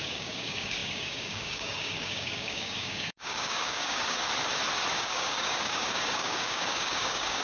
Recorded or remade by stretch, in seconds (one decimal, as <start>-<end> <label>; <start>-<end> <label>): 0.0-4.2 remade; 4.2-4.9 recorded; 4.9-7.4 remade

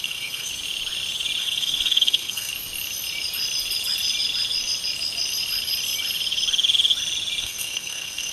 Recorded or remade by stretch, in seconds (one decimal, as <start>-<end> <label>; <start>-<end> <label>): 0.0-0.5 remade; 0.5-1.4 recorded; 1.4-2.5 remade; 2.5-7.4 recorded; 7.4-8.3 remade

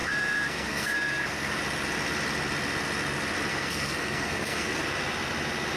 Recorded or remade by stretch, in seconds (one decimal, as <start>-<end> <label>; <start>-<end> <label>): 0.0-1.6 remade; 1.6-3.5 recorded; 3.5-4.8 remade; 4.8-5.8 recorded

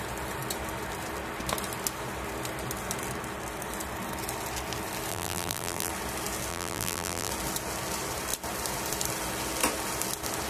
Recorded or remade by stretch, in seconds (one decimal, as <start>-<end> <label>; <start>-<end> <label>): 0.0-5.1 recorded; 5.1-5.9 remade; 5.9-6.5 recorded; 6.5-7.3 remade; 7.3-10.5 recorded

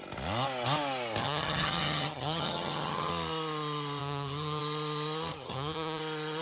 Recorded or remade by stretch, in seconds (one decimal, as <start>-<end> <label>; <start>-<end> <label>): 0.0-1.2 recorded; 1.2-3.1 remade; 3.1-4.0 recorded; 4.0-4.6 remade; 4.6-5.3 recorded; 5.3-6.0 remade; 6.0-6.4 recorded

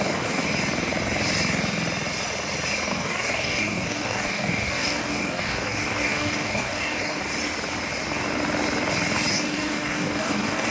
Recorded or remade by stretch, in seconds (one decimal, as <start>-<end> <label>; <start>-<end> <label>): 0.0-0.4 remade; 0.4-2.9 recorded; 2.9-7.2 remade; 7.2-9.3 recorded; 9.3-10.7 remade

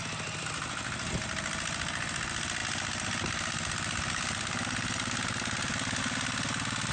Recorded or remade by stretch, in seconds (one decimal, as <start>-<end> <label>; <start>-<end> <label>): 0.0-6.9 recorded

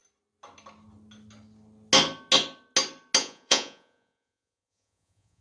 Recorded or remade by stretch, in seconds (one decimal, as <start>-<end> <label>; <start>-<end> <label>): 0.0-3.2 recorded; 3.2-5.4 remade